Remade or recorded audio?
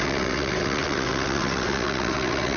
remade